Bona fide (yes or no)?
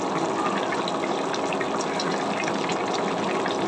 yes